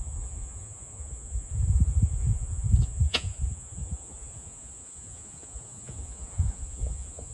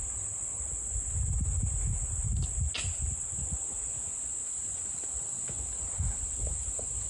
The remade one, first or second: first